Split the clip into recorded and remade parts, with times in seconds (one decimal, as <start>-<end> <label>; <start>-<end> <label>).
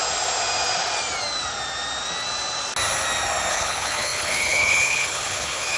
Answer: 0.0-3.5 recorded; 3.5-5.8 remade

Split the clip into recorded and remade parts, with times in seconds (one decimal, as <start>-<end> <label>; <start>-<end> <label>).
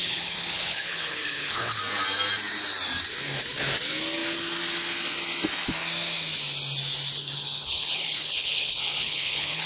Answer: 0.0-1.8 remade; 1.8-7.2 recorded; 7.2-9.7 remade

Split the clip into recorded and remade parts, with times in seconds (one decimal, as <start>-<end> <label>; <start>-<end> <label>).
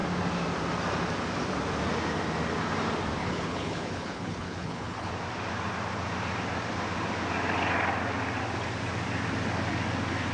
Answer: 0.0-3.2 recorded; 3.2-5.1 remade; 5.1-10.3 recorded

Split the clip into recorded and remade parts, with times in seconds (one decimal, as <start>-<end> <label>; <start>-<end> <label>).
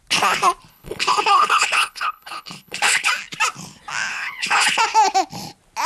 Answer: 0.0-0.7 recorded; 0.7-3.1 remade; 3.1-4.1 recorded; 4.1-4.8 remade; 4.8-5.9 recorded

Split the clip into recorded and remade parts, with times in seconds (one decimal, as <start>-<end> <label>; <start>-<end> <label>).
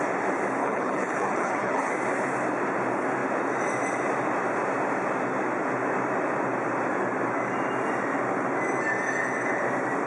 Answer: 0.0-0.6 recorded; 0.6-1.9 remade; 1.9-10.1 recorded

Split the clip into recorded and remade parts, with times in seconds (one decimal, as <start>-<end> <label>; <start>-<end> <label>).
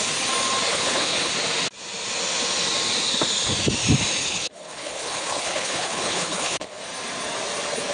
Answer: 0.0-0.7 recorded; 0.7-1.3 remade; 1.3-4.2 recorded; 4.2-6.8 remade; 6.8-7.9 recorded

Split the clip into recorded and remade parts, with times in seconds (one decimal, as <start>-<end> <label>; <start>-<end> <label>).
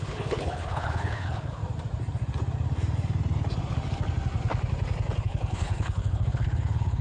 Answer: 0.0-1.6 remade; 1.6-5.2 recorded; 5.2-7.0 remade